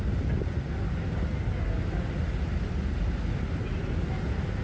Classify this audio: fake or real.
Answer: real